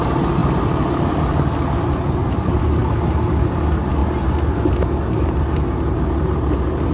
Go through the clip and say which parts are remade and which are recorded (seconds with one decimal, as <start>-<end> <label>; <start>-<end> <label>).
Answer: 0.0-6.9 recorded